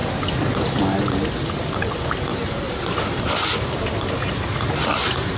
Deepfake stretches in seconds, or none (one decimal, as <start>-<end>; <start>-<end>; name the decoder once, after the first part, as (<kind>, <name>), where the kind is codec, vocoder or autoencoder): none